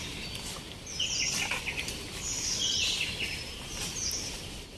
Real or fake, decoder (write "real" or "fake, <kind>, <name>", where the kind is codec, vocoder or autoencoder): real